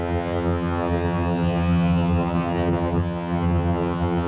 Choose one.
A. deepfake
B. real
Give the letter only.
A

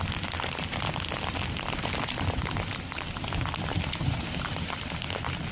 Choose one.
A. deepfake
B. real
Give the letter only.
A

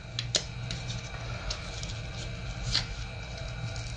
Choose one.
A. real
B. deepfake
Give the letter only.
A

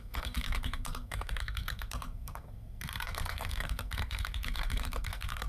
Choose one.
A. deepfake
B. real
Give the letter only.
A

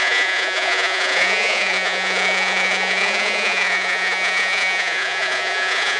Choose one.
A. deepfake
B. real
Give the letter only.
A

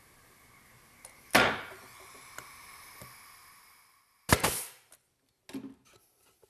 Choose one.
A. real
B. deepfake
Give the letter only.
A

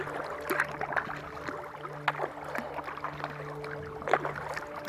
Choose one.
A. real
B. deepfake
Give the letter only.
A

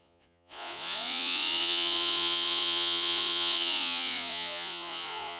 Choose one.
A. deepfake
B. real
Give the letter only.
A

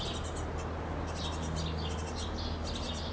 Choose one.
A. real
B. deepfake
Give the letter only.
A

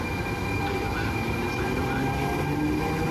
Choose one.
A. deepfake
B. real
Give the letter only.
B